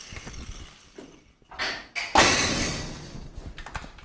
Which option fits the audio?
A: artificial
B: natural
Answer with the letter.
B